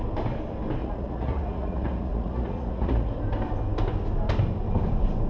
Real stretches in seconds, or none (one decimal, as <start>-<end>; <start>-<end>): 0.0-0.8; 3.1-5.3